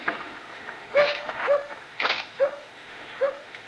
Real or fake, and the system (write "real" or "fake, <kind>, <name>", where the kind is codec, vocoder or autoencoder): fake, autoencoder, DAC-VAE